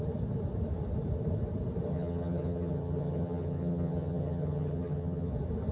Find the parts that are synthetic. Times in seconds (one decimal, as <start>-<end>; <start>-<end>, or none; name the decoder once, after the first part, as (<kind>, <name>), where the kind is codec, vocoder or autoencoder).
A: 1.9-5.3 (vocoder, HiFi-GAN)